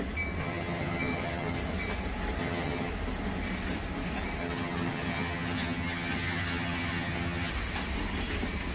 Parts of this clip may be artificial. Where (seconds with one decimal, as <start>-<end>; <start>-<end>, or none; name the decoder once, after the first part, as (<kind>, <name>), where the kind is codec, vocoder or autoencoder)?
0.4-1.6 (vocoder, HiFi-GAN); 2.4-2.9; 4.4-7.5